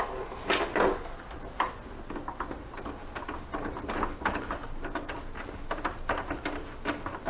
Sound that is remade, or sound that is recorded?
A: recorded